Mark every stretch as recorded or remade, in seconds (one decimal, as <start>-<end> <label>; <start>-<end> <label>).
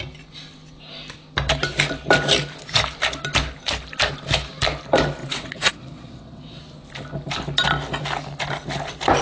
0.0-5.2 recorded; 5.2-6.6 remade; 6.6-9.2 recorded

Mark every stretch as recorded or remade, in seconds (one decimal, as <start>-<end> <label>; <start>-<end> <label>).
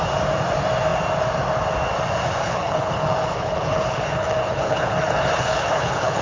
0.0-2.4 recorded; 2.4-6.2 remade